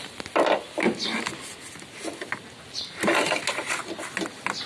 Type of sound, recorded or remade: recorded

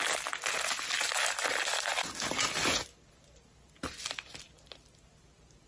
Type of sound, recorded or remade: recorded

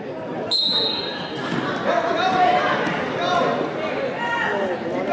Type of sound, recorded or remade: recorded